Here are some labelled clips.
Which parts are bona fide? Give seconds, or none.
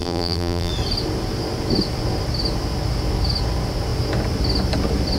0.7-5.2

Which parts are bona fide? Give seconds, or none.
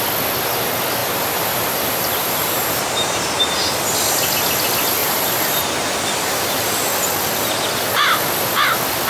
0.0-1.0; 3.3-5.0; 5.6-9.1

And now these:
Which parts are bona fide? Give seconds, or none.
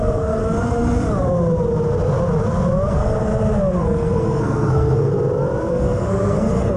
0.4-2.9; 3.3-3.8; 5.1-5.7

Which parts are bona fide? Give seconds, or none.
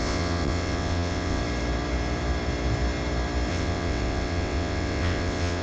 1.4-3.5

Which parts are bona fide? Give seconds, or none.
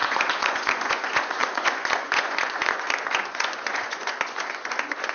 none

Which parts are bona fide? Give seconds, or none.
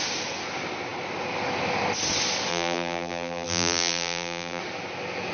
0.0-2.5; 4.6-5.3